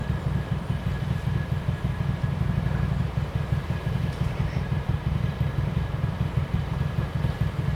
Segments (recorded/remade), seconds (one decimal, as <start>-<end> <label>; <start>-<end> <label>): 0.0-2.2 recorded; 2.2-7.8 remade